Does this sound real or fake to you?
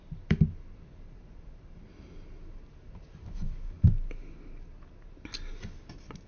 real